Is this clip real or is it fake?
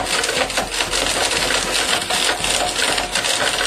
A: real